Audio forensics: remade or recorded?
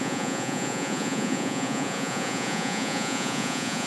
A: remade